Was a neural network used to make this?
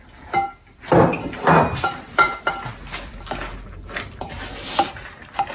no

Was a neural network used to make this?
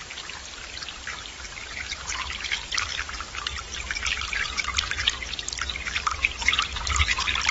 yes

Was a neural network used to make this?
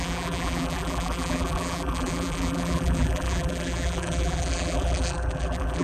yes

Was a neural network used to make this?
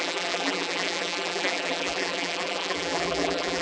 yes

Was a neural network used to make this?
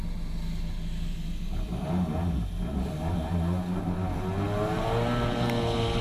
no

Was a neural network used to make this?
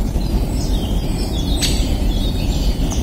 yes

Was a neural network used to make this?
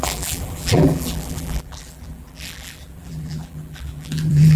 yes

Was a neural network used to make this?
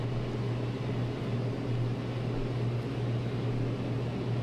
no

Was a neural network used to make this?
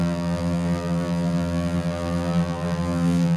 yes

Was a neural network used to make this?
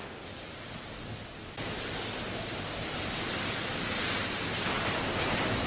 no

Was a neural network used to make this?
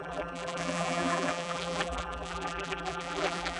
yes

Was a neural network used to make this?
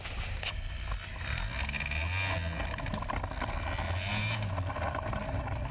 no